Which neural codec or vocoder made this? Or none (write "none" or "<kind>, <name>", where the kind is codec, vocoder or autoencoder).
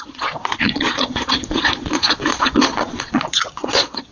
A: vocoder, Vocos